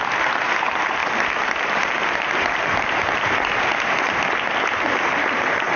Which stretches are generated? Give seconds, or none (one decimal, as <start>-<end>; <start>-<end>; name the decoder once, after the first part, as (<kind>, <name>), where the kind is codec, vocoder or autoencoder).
none